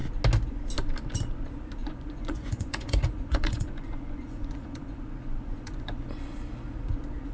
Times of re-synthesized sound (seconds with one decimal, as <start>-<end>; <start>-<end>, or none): 1.8-6.2